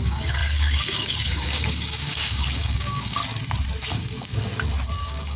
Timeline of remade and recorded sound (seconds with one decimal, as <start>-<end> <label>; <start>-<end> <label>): 0.0-3.2 remade; 3.2-3.9 recorded; 3.9-4.5 remade; 4.5-5.0 recorded; 5.0-5.4 remade

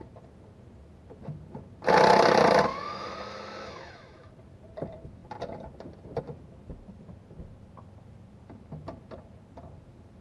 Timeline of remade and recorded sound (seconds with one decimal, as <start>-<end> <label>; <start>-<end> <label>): 0.0-2.7 recorded; 2.7-4.3 remade; 4.3-10.2 recorded

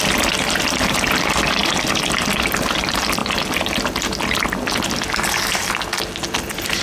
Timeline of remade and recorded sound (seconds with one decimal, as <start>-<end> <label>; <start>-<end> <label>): 0.0-6.8 recorded

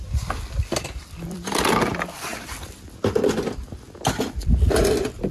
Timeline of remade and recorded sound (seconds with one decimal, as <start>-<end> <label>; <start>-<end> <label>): 0.0-5.3 recorded

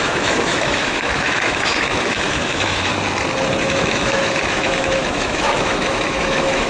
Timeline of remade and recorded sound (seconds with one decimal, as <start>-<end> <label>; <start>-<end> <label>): 0.0-2.9 remade; 2.9-3.6 recorded; 3.6-6.7 remade

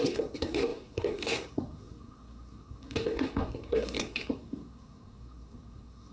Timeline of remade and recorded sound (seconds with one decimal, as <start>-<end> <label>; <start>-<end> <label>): 0.0-6.1 remade